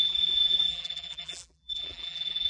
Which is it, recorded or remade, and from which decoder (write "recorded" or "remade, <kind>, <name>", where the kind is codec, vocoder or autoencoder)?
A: remade, vocoder, BigVGAN v2